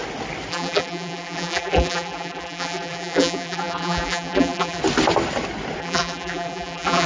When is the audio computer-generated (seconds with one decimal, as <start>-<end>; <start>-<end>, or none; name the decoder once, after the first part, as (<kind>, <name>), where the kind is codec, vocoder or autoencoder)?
0.5-4.8 (vocoder, BigVGAN v2); 5.8-7.1